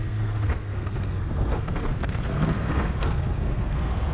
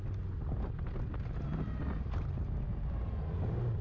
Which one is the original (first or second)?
second